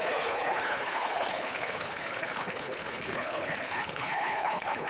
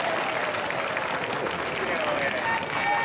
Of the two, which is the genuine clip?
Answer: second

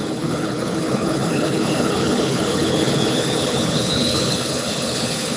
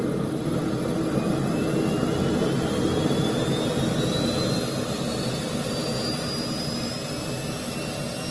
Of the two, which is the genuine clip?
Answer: second